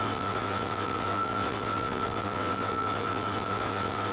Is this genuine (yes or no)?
no